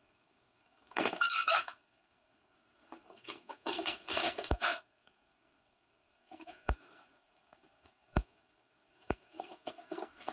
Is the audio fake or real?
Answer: fake